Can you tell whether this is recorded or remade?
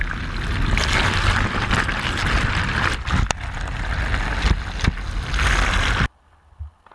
recorded